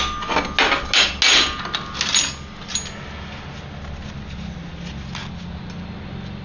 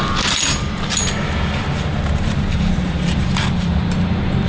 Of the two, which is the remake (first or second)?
second